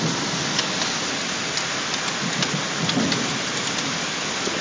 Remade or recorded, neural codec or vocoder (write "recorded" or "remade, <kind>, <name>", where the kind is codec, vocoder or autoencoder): recorded